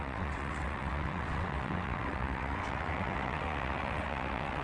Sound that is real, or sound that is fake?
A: fake